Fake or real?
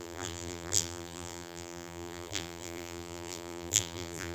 fake